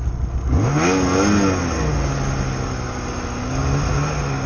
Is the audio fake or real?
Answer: real